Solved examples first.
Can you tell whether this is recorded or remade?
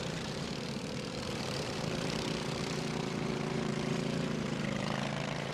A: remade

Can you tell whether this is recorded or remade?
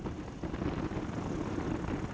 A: recorded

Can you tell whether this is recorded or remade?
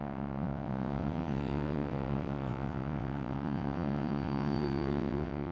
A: remade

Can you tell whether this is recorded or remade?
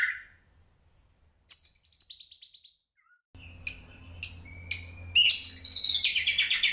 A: recorded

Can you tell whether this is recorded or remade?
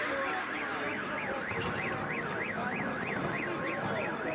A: recorded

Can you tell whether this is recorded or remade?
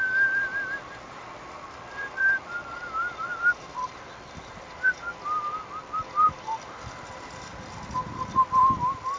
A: remade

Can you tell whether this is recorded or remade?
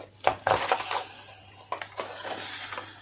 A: recorded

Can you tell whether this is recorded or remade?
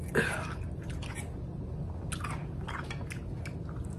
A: recorded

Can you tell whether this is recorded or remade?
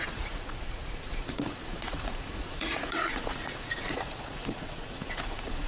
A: remade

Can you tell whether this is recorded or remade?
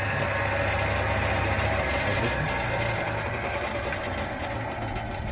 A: recorded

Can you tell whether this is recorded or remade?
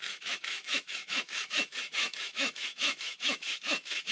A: remade